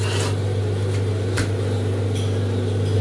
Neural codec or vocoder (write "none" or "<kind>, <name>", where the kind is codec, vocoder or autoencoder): none